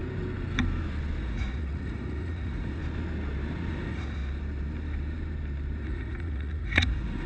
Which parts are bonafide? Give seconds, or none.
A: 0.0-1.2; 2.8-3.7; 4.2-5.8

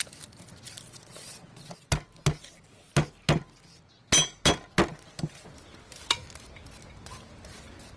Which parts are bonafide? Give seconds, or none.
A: 0.0-0.9; 1.9-8.0

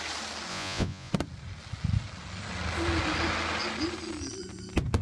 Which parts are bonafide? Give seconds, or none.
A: 0.0-0.5; 1.1-5.0

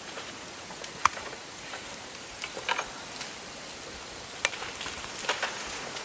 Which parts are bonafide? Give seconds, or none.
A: 1.9-5.5